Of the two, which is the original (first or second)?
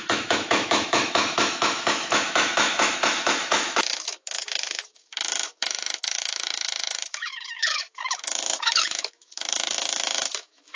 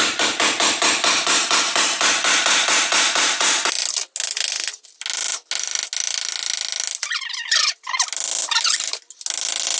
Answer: second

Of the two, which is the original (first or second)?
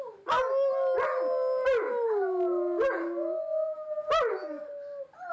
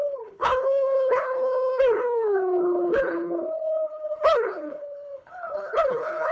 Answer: first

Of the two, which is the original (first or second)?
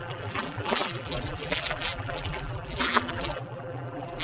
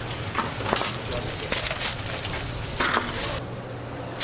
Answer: second